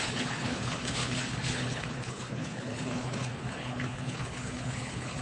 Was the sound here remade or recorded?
remade